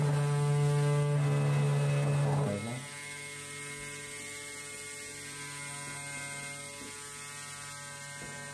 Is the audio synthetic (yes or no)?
no